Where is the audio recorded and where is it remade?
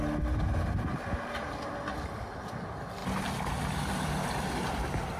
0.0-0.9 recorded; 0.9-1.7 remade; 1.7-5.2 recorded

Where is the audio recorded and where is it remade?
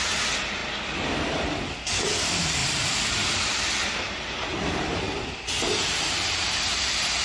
0.0-0.6 remade; 0.6-1.9 recorded; 1.9-7.2 remade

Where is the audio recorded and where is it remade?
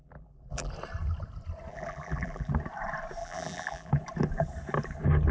0.0-0.7 remade; 0.7-1.7 recorded; 1.7-2.5 remade; 2.5-3.2 recorded; 3.2-3.9 remade; 3.9-5.3 recorded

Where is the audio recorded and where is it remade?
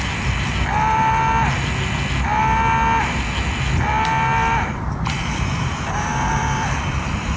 0.0-4.4 recorded; 4.4-7.4 remade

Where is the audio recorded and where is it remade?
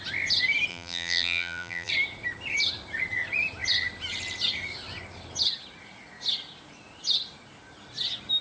0.0-0.7 recorded; 0.7-1.9 remade; 1.9-8.4 recorded